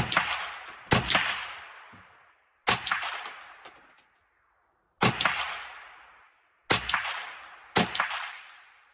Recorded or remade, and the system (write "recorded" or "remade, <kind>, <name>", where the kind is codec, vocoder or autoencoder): recorded